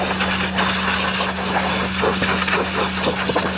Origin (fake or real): real